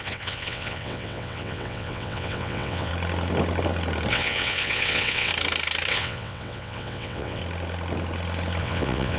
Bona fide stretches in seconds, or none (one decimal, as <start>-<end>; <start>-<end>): 2.9-4.1; 5.3-5.9; 7.4-8.6